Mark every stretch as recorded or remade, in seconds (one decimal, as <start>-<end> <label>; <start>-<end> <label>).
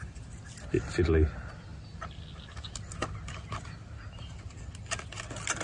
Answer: 0.0-5.6 recorded